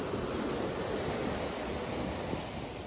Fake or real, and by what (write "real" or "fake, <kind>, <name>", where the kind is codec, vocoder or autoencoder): real